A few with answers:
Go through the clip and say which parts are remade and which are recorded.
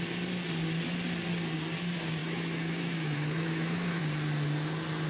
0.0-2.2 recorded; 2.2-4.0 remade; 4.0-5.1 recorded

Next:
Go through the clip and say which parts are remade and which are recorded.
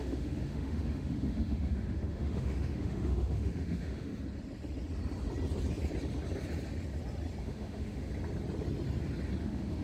0.0-4.1 remade; 4.1-7.4 recorded; 7.4-8.1 remade; 8.1-9.4 recorded; 9.4-9.8 remade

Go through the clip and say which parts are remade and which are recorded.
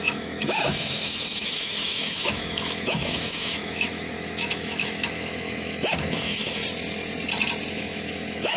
0.0-6.6 remade; 6.6-7.7 recorded; 7.7-8.6 remade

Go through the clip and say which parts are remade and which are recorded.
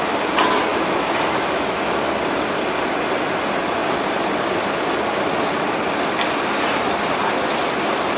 0.0-0.7 recorded; 0.7-2.0 remade; 2.0-8.2 recorded